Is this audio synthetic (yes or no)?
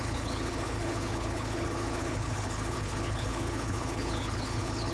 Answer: yes